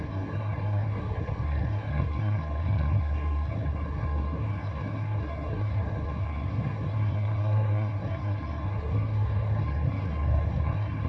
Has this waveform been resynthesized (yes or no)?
yes